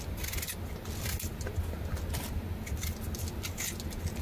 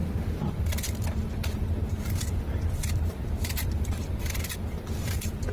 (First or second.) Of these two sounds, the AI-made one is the second